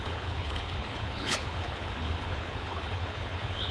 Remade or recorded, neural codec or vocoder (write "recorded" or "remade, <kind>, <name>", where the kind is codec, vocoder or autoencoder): remade, codec, HILCodec